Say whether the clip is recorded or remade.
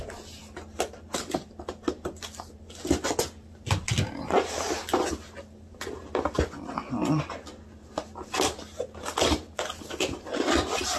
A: recorded